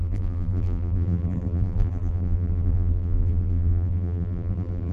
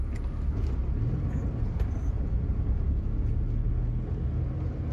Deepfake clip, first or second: first